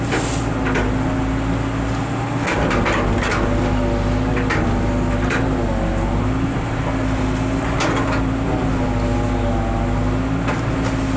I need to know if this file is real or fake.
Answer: real